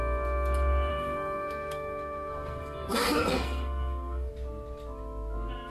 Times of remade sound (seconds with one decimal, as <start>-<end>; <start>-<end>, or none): 0.9-4.3